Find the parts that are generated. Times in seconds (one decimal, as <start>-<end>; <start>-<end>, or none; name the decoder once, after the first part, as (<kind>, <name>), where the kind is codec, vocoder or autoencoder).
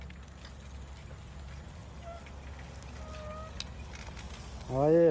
none